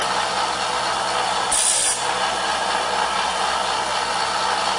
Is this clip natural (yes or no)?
yes